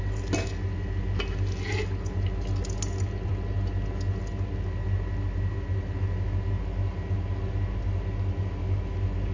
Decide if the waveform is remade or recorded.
recorded